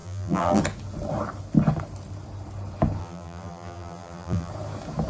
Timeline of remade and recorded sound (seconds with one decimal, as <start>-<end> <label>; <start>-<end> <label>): 0.0-0.6 remade; 0.6-3.0 recorded; 3.0-4.5 remade; 4.5-5.1 recorded